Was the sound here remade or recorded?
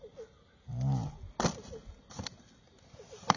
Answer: recorded